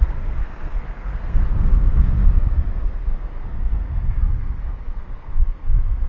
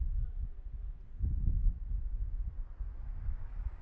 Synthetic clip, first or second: first